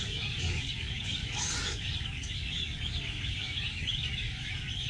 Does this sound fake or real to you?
fake